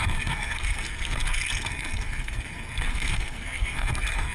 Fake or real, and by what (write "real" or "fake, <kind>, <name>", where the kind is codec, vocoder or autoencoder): fake, codec, SNAC